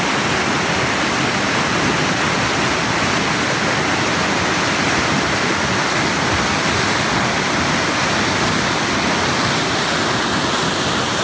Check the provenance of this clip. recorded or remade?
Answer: recorded